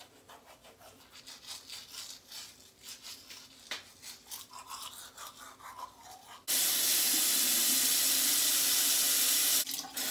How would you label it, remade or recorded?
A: recorded